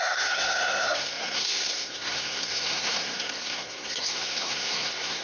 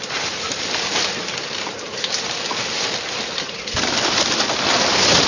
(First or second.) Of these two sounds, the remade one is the first